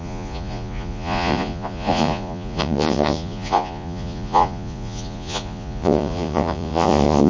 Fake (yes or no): yes